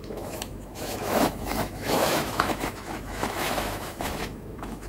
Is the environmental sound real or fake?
fake